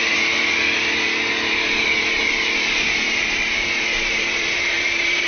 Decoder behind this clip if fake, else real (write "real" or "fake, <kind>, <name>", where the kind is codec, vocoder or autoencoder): fake, vocoder, BigVGAN v2